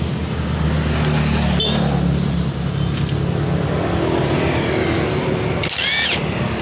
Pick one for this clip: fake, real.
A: real